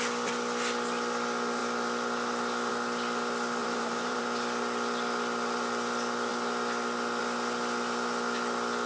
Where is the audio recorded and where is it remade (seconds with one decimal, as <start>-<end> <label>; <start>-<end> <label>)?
0.0-3.6 recorded; 3.6-4.2 remade; 4.2-8.9 recorded

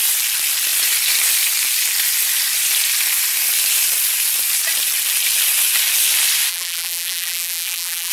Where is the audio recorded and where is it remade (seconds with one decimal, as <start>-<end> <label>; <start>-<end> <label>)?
0.0-6.5 recorded; 6.5-8.1 remade

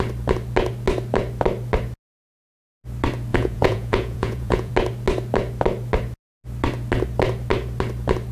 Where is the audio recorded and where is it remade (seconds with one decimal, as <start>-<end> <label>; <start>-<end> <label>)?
0.0-3.3 recorded; 3.3-4.7 remade; 4.7-8.3 recorded

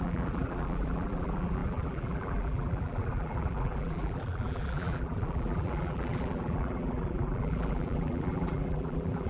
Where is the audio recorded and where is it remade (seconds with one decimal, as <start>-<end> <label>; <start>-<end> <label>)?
0.0-9.3 remade

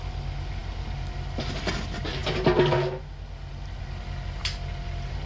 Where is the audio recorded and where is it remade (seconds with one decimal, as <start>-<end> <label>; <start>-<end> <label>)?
0.0-5.3 recorded

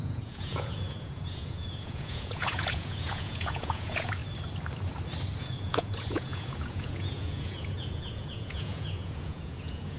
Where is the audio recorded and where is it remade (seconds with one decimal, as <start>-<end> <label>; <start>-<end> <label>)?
0.0-4.2 remade; 4.2-5.4 recorded; 5.4-10.0 remade

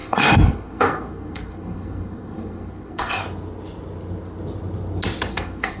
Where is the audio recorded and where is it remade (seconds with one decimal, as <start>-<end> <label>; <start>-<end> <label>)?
0.0-3.2 remade; 3.2-5.3 recorded; 5.3-5.8 remade

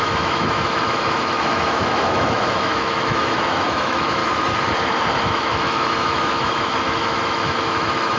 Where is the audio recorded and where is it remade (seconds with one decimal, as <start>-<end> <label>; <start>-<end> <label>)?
0.0-4.2 remade; 4.2-5.2 recorded; 5.2-8.2 remade